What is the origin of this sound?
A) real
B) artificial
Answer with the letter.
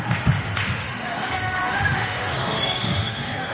B